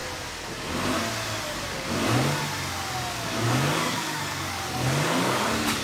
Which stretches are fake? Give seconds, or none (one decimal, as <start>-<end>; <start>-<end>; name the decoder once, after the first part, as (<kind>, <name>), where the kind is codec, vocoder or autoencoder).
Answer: 1.4-2.0 (codec, DAC); 3.1-5.8

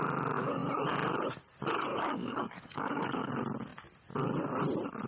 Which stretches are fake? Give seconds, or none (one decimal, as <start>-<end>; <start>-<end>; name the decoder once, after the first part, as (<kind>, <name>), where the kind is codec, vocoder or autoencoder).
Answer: 1.9-3.3 (codec, DAC)

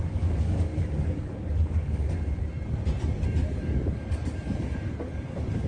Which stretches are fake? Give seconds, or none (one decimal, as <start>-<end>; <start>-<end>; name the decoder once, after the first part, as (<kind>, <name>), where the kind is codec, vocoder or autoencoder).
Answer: 0.0-2.0 (codec, DAC); 3.6-5.7

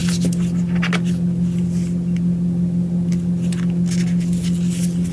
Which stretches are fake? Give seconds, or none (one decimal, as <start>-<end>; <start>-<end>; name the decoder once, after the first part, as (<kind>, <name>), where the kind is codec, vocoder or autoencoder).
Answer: none

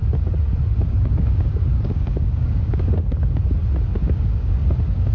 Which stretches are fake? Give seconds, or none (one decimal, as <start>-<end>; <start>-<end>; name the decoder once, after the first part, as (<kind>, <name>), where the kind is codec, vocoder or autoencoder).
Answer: 0.7-2.9 (codec, DAC); 3.9-5.1

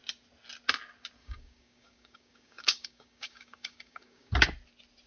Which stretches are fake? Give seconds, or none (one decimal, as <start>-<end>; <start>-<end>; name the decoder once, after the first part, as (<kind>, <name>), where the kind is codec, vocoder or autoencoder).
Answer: 1.2-4.3 (codec, DAC)

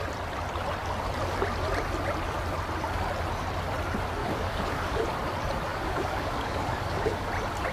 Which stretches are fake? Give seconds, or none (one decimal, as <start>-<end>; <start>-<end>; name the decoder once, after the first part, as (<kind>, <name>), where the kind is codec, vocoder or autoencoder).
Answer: 4.2-5.0 (codec, DAC); 5.7-7.3

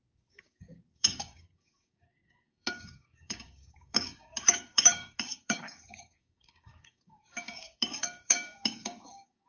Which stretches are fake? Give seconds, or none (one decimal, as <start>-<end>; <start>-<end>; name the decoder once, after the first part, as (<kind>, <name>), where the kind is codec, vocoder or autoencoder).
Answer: 0.0-9.5 (codec, DAC)